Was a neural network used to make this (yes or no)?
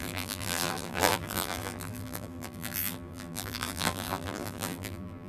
yes